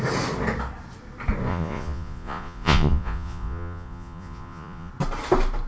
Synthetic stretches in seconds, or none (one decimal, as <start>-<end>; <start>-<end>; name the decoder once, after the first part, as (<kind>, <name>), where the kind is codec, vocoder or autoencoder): 1.5-4.9 (vocoder, Vocos)